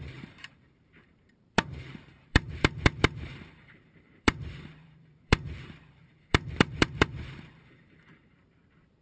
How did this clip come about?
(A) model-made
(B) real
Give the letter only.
A